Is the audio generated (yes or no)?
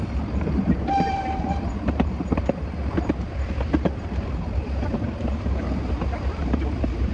yes